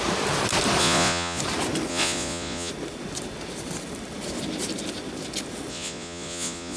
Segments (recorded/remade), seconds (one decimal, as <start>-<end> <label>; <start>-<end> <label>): 0.0-0.8 recorded; 0.8-1.4 remade; 1.4-1.9 recorded; 1.9-2.7 remade; 2.7-5.7 recorded; 5.7-6.8 remade